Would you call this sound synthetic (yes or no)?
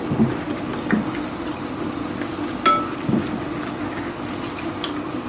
no